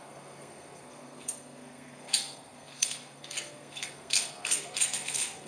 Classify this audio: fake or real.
fake